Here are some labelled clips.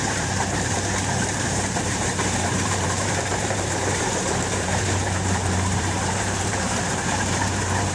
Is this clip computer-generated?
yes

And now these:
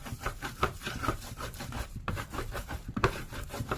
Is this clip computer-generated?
yes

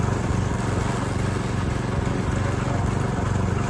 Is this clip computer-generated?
no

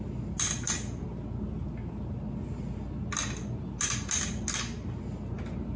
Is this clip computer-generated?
no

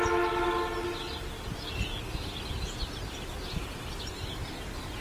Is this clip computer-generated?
no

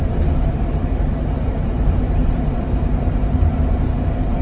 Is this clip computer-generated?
yes